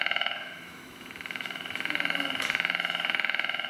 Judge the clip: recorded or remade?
remade